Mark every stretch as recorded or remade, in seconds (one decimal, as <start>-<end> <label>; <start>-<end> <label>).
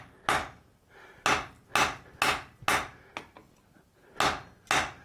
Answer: 0.0-5.0 recorded